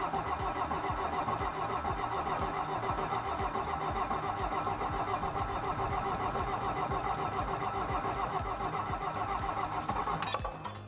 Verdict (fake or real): real